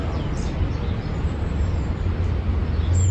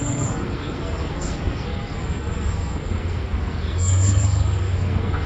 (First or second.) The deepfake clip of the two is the second